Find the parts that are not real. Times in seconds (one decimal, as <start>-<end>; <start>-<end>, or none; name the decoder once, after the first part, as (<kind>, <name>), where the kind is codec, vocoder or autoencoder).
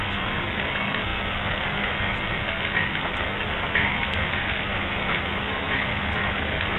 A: 0.0-6.8 (codec, SNAC)